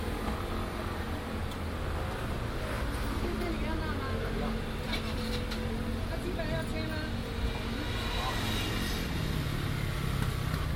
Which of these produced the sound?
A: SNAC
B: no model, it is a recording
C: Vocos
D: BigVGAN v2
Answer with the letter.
B